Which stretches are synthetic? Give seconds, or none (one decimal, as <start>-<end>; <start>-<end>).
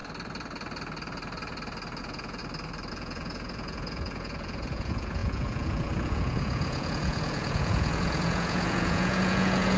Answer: 2.0-2.4; 2.9-9.8